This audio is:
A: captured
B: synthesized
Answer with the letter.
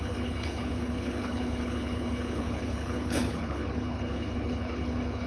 B